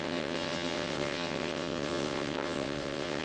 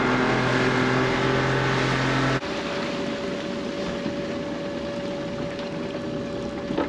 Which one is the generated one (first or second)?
first